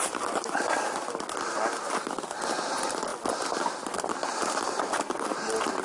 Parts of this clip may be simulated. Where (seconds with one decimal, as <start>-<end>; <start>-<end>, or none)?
none

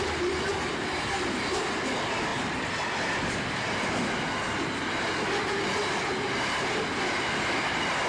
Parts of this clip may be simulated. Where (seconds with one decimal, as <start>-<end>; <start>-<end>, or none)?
none